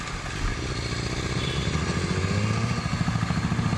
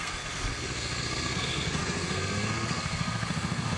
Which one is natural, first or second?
first